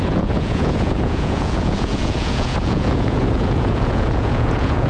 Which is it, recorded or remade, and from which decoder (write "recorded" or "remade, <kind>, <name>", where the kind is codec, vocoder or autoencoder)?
remade, vocoder, Vocos